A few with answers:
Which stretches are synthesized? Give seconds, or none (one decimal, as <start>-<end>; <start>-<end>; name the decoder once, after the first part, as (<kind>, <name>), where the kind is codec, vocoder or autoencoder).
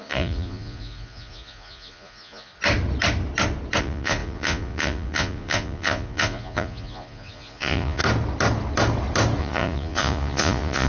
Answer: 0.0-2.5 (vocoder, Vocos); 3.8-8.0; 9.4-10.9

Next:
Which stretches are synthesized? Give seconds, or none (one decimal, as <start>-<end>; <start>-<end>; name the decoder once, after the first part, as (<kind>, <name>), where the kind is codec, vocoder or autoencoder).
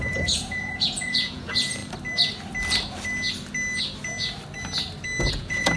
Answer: 0.0-1.8 (vocoder, Vocos); 5.3-5.8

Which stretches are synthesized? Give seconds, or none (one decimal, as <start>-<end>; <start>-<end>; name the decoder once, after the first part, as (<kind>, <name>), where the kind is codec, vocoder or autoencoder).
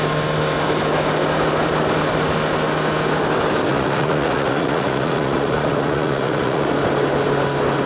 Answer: 3.7-6.7 (vocoder, Vocos)